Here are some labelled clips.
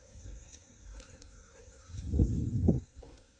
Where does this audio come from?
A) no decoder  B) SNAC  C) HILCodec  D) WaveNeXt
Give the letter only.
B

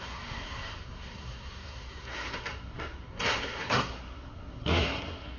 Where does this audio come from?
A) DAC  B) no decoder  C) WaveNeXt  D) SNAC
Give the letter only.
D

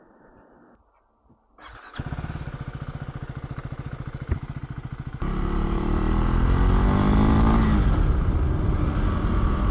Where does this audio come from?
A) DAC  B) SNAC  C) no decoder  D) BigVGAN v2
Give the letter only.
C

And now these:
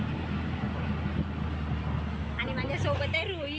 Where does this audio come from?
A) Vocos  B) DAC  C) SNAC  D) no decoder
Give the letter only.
D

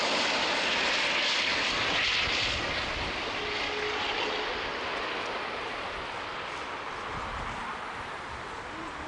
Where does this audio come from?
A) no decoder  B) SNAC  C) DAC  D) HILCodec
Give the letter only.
A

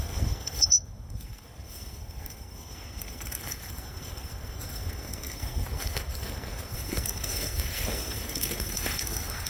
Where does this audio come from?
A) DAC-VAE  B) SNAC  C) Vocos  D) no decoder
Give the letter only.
B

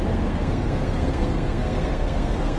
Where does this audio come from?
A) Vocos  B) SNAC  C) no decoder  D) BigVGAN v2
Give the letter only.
B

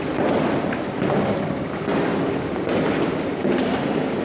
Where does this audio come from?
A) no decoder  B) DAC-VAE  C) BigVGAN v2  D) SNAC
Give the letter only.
A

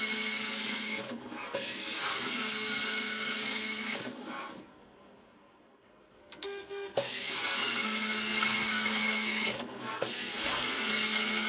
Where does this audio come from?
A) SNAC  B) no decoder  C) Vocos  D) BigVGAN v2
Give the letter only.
A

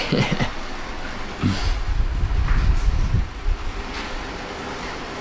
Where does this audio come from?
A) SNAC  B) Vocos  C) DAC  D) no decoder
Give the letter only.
D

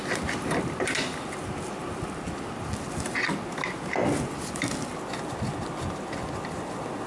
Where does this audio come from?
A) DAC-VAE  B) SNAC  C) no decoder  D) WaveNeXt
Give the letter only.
C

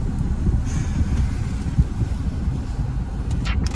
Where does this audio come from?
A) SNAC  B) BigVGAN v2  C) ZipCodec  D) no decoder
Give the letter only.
D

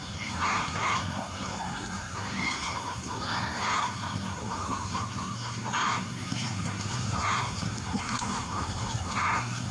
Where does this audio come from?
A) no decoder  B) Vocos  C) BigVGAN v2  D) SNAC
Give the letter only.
D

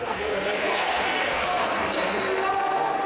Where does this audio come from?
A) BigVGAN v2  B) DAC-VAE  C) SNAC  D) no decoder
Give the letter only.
C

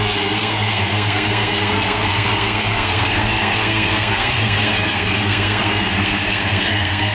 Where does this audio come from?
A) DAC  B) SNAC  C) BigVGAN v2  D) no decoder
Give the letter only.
B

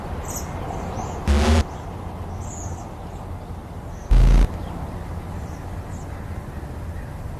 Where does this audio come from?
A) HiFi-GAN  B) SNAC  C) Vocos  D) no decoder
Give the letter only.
D